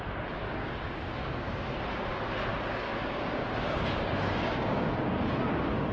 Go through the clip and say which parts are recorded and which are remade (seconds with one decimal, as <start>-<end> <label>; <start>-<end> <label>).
0.0-0.6 recorded; 0.6-1.6 remade; 1.6-2.5 recorded; 2.5-5.2 remade; 5.2-5.9 recorded